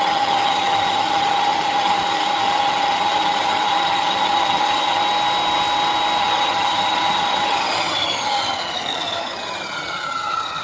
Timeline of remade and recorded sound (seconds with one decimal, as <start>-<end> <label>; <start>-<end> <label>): 0.0-5.0 remade; 5.0-6.2 recorded; 6.2-10.6 remade